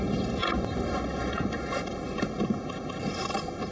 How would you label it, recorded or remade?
recorded